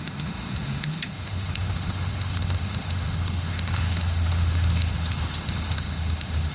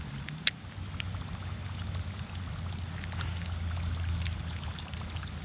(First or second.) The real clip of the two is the second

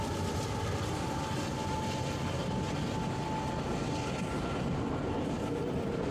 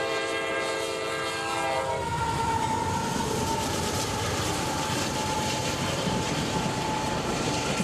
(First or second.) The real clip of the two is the first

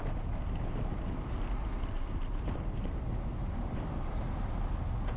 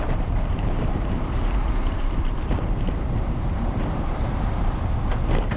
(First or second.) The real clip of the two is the first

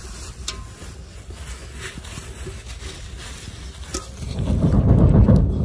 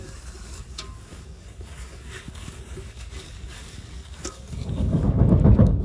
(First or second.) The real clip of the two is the first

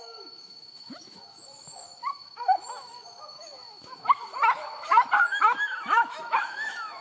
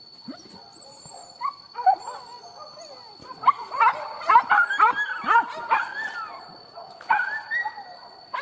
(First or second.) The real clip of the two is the second